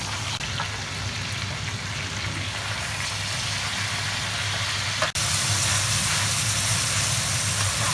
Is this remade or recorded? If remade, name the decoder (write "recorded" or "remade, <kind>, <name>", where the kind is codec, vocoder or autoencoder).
recorded